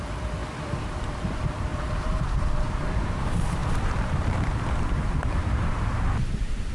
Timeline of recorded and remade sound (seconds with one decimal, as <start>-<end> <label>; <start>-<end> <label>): 0.0-0.4 remade; 0.4-1.2 recorded; 1.2-6.7 remade